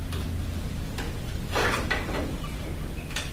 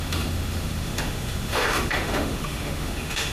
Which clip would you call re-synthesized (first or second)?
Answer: second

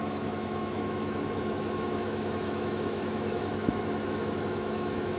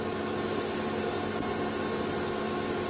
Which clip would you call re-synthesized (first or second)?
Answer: first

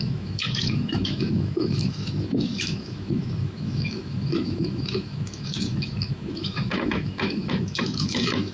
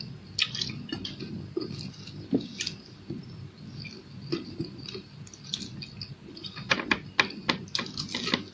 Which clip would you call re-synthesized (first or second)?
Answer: first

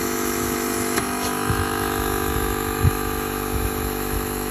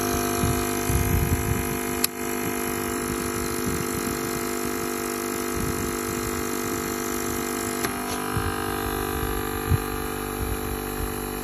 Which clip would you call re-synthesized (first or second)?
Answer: first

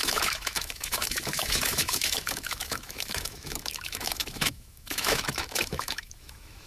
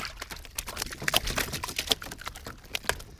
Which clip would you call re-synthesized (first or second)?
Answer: first